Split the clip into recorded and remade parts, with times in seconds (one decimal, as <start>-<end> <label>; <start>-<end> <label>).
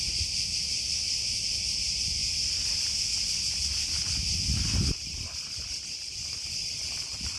0.0-2.2 remade; 2.2-4.9 recorded; 4.9-7.4 remade